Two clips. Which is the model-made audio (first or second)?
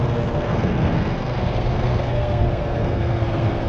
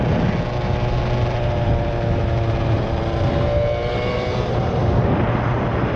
first